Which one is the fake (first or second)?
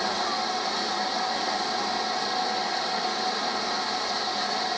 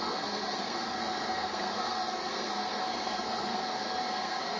second